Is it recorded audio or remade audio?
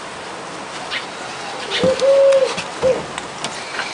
recorded